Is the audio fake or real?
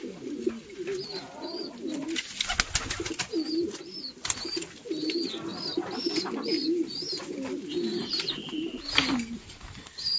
real